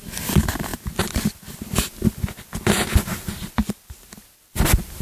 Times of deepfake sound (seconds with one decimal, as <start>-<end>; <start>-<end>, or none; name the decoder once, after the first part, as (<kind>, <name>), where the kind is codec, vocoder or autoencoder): none